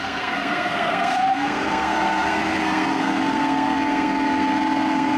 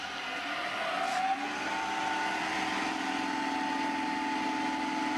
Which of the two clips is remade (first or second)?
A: first